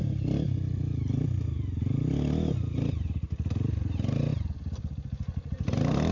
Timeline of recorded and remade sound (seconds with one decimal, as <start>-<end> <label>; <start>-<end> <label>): 0.0-6.1 recorded